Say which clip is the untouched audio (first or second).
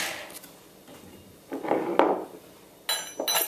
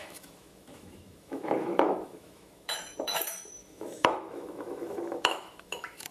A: first